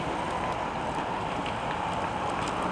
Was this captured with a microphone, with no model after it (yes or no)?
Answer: yes